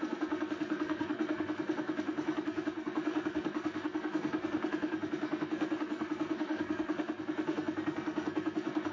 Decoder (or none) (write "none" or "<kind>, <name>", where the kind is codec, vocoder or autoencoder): codec, SNAC